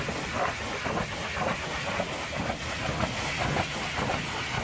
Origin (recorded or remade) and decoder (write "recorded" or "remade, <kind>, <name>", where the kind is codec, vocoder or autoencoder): recorded